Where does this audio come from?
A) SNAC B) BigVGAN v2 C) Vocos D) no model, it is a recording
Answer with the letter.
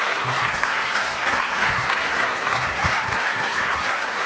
A